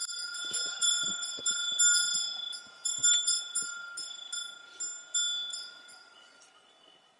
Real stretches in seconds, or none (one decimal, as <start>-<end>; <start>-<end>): 0.0-0.9; 1.4-5.5; 6.4-7.2